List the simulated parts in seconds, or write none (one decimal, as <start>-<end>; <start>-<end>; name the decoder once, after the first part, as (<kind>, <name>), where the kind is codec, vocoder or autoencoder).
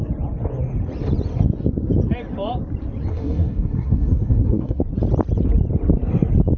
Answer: 3.1-4.8 (codec, SNAC)